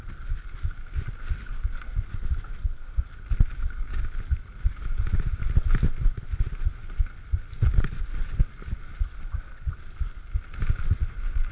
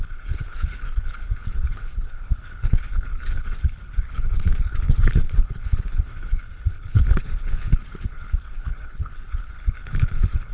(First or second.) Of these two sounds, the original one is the first